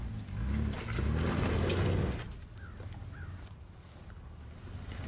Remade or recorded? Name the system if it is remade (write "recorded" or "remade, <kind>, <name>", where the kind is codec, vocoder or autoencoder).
recorded